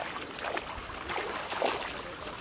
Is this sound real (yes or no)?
yes